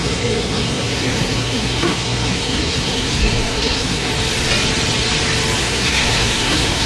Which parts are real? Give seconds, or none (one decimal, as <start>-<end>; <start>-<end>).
4.1-5.6